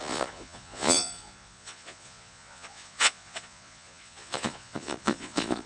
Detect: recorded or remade remade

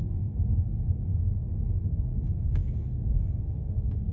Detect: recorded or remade remade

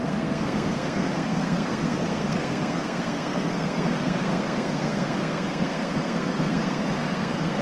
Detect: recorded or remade remade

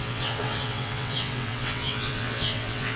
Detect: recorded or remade remade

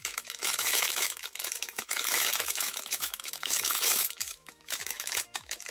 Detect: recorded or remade remade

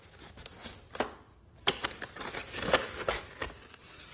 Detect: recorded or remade recorded